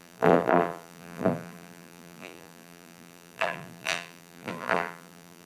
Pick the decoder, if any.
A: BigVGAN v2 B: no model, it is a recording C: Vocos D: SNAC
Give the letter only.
A